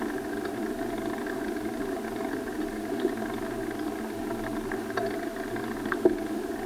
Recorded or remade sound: recorded